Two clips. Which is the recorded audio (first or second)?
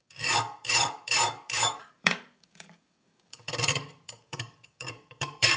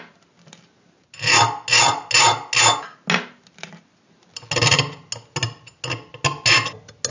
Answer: second